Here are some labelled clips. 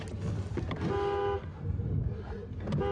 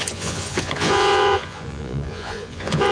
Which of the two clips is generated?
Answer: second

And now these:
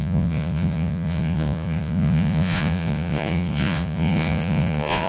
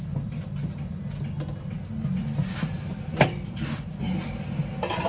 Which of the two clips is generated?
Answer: first